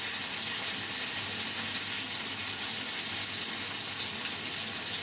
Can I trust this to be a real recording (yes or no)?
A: yes